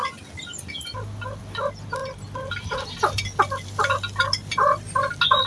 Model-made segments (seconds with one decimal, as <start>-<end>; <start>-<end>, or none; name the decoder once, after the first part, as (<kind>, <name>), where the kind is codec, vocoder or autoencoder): none